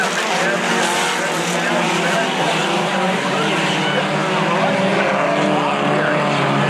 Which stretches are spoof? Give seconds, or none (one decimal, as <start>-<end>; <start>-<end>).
2.6-3.8